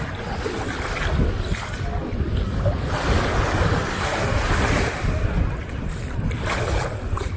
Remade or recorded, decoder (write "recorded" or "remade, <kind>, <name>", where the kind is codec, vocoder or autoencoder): recorded